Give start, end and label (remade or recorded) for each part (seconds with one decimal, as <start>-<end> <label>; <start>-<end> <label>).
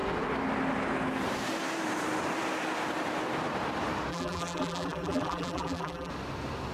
0.0-4.1 recorded; 4.1-6.1 remade; 6.1-6.7 recorded